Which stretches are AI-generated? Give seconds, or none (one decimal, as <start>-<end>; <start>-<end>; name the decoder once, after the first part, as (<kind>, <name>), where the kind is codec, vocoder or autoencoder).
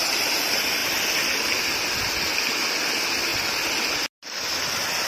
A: none